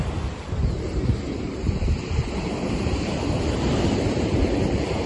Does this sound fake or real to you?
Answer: fake